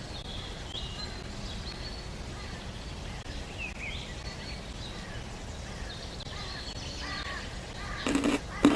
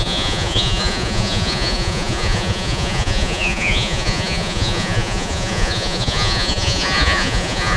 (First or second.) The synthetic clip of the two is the second